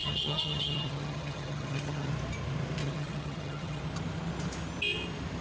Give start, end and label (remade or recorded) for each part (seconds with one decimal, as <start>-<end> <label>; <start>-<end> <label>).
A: 0.0-2.1 remade; 2.1-2.8 recorded; 2.8-3.8 remade; 3.8-5.4 recorded